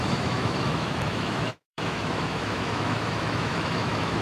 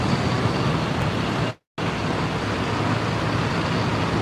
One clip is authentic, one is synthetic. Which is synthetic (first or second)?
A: first